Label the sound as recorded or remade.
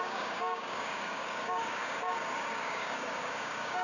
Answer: remade